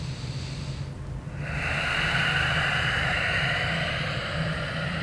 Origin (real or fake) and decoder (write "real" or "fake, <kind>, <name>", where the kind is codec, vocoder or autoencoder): fake, vocoder, BigVGAN v2